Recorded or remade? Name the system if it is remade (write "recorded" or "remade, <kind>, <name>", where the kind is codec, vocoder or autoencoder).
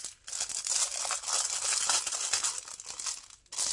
recorded